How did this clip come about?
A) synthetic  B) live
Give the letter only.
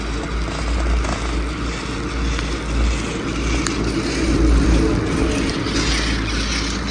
B